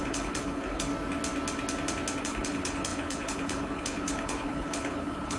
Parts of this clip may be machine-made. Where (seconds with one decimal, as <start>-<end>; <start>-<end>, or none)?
0.0-0.9; 2.2-5.4

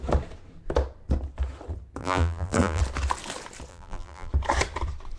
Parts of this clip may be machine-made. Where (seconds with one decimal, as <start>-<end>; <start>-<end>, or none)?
2.0-2.8; 3.7-4.3

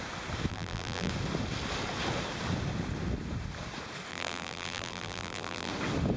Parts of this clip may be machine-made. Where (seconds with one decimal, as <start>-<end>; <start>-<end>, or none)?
0.5-1.1; 4.1-5.7

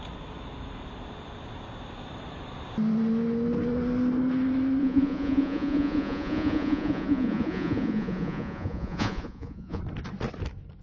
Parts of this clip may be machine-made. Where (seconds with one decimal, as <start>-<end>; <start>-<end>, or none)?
4.8-9.8